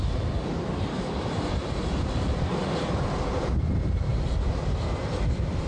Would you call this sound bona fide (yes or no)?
no